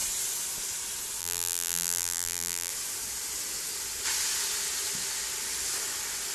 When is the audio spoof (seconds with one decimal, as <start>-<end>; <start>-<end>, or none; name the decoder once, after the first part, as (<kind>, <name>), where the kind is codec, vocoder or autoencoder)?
1.2-2.7 (vocoder, BigVGAN v2)